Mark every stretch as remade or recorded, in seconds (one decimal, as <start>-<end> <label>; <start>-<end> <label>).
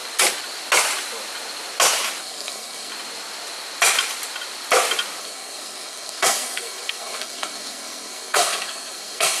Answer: 0.0-2.2 recorded; 2.2-2.9 remade; 2.9-5.2 recorded; 5.2-9.4 remade